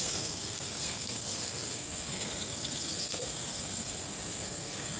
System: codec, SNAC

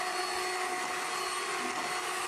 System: none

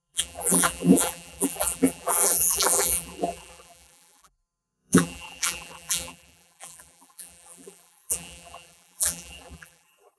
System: vocoder, BigVGAN v2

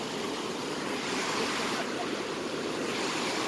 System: none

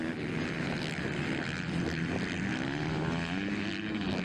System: none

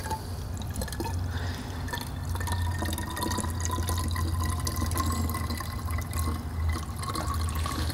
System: none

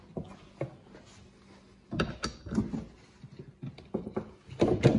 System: none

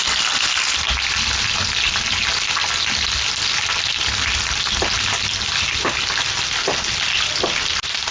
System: none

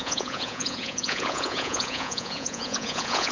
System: vocoder, Vocos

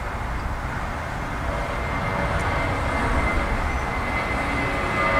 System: none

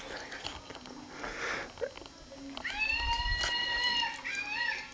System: none